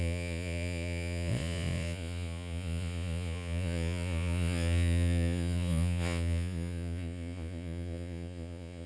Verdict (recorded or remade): remade